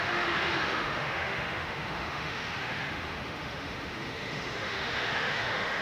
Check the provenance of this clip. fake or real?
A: fake